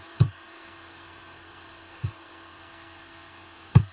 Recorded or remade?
remade